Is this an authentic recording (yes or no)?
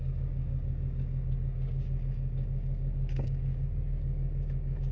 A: no